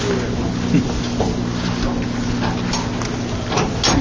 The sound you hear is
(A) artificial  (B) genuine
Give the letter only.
B